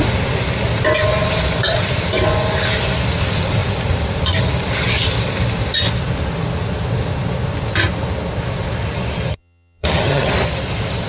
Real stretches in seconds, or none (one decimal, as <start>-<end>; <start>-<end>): 0.0-9.3; 10.3-11.1